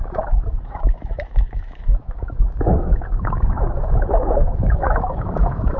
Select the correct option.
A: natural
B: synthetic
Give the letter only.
B